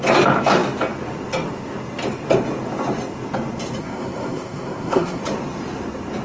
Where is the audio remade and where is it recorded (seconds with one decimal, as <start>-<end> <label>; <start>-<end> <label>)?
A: 0.0-3.8 recorded; 3.8-5.2 remade; 5.2-6.2 recorded